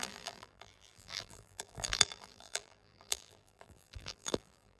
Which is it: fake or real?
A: fake